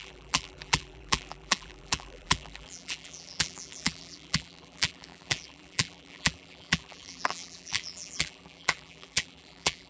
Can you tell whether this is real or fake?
fake